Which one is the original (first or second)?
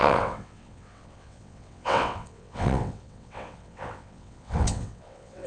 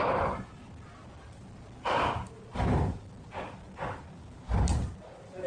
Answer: second